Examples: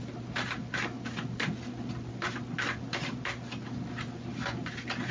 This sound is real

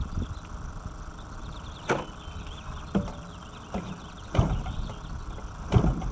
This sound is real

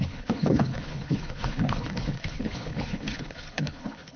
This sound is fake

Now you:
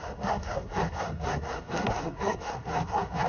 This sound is fake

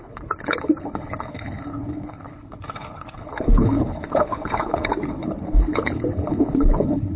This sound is fake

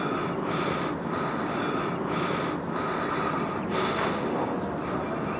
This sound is real